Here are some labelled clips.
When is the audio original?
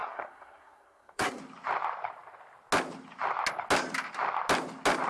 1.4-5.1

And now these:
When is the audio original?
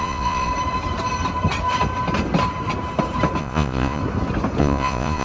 0.5-3.4; 4.0-4.6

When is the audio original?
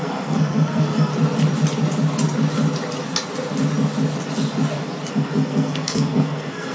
1.1-5.1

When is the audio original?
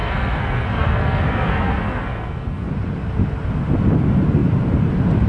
2.7-5.3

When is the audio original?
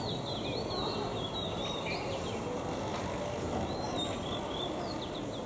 0.0-5.5